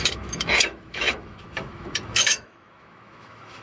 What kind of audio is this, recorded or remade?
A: remade